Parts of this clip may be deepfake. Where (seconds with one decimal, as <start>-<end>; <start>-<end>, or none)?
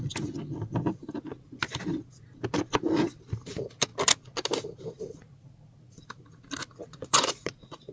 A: 6.9-7.9